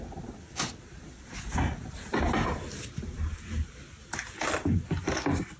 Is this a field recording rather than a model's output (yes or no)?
yes